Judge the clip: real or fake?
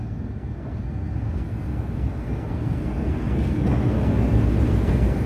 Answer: fake